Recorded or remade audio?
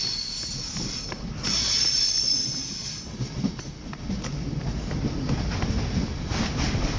recorded